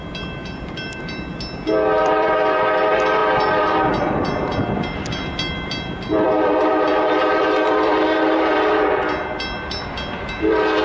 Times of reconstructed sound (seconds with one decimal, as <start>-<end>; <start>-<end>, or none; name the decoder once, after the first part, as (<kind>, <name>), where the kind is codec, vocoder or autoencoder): 0.0-1.3 (vocoder, BigVGAN v2); 2.0-10.8